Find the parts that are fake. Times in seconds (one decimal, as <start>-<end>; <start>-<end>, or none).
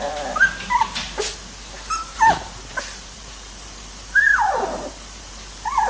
2.0-5.5